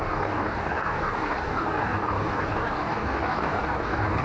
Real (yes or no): no